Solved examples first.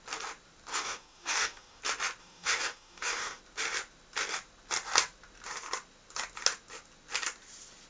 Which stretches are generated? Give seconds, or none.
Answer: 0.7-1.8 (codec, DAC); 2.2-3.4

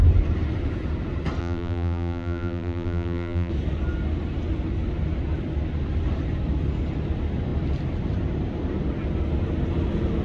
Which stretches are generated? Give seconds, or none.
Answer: 1.4-3.5 (vocoder, BigVGAN v2)

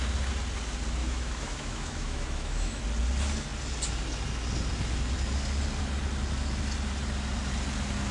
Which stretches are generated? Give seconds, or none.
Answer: 1.0-2.8 (autoencoder, DAC-VAE)